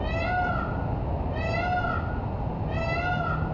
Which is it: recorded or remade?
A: recorded